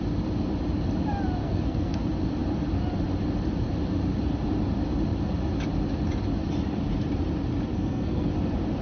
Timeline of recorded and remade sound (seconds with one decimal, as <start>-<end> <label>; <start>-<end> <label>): 0.0-1.4 recorded; 1.4-2.0 remade; 2.0-7.7 recorded; 7.7-8.3 remade; 8.3-8.8 recorded